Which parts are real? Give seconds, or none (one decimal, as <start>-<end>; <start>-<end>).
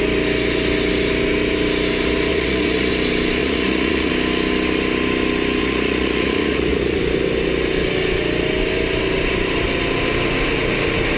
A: 0.0-2.3; 2.9-3.4; 4.1-5.6; 7.0-11.2